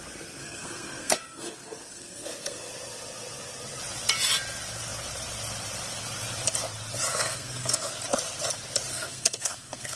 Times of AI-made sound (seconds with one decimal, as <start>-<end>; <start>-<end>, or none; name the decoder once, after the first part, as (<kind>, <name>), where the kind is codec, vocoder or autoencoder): 0.4-2.7 (codec, SNAC); 7.1-8.0; 8.9-10.0